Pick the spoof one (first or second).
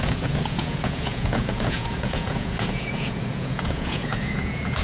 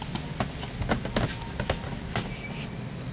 first